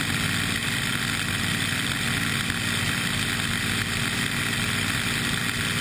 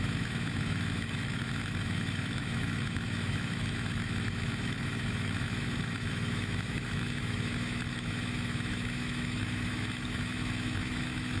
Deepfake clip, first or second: second